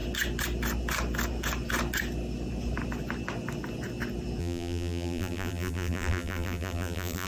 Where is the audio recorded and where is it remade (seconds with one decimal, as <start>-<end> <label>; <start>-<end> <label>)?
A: 0.0-4.4 recorded; 4.4-7.3 remade